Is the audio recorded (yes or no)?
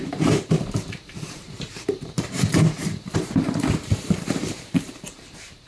no